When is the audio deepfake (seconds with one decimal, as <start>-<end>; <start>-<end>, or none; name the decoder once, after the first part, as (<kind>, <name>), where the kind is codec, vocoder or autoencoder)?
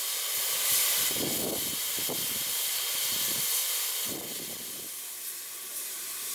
none